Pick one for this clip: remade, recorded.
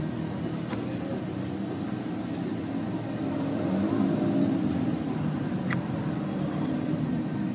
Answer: recorded